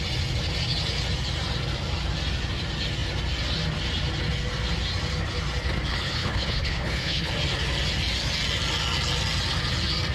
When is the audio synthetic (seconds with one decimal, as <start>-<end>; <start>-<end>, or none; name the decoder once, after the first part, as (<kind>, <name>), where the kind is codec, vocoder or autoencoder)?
5.9-7.3 (codec, HILCodec)